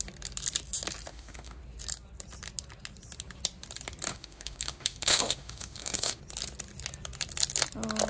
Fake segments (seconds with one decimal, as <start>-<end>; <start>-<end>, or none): 1.1-1.6; 4.1-6.2